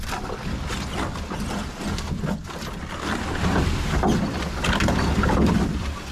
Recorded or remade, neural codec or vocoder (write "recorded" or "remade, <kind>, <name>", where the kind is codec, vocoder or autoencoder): recorded